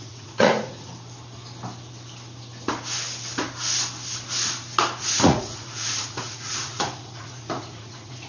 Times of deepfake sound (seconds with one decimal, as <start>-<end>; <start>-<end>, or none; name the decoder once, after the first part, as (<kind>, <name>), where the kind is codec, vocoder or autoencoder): 0.0-0.9 (vocoder, Vocos); 5.0-8.3